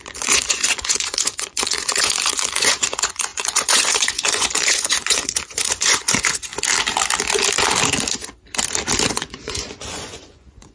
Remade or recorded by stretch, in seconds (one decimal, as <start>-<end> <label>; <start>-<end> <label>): 0.0-6.5 remade; 6.5-9.1 recorded; 9.1-10.7 remade